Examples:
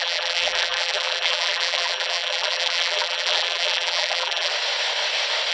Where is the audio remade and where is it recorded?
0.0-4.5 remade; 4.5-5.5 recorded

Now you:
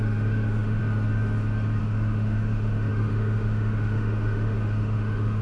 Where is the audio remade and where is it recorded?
0.0-0.8 remade; 0.8-1.8 recorded; 1.8-5.4 remade

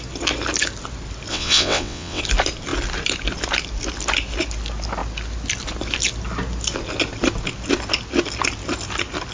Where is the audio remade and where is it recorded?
0.0-1.3 recorded; 1.3-2.2 remade; 2.2-9.3 recorded